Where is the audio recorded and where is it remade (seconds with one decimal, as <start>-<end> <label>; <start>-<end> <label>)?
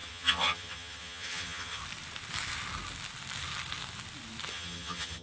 0.0-1.8 remade; 1.8-4.5 recorded; 4.5-5.2 remade